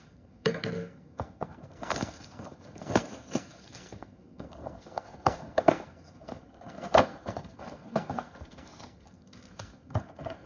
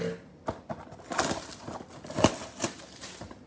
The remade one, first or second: first